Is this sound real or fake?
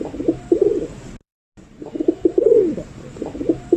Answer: real